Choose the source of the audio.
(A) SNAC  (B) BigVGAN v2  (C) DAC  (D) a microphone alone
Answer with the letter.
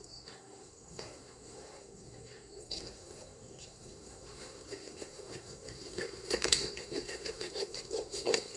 A